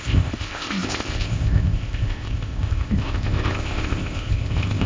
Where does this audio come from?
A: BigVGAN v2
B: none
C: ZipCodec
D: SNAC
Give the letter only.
C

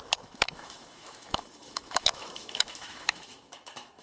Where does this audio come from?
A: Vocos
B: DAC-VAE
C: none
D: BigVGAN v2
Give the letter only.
B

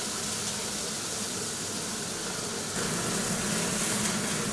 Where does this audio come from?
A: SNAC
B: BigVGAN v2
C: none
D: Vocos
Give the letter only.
C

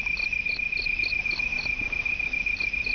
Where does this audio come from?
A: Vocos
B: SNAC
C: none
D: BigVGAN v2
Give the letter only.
C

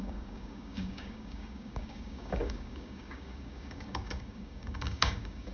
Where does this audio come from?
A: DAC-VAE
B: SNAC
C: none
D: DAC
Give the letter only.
D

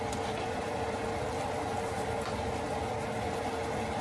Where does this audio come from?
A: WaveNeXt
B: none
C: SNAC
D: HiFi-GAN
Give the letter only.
B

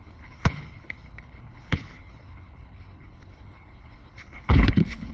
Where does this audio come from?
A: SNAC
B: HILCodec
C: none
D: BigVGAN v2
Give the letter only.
B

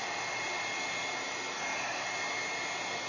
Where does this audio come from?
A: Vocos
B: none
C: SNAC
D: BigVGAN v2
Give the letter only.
B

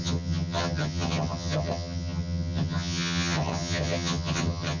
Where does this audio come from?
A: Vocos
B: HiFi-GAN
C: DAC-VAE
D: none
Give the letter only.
B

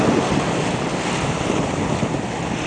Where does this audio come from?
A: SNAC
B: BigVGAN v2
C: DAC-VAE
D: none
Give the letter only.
D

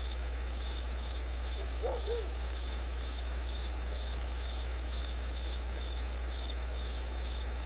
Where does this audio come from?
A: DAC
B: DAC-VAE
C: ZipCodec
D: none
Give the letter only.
B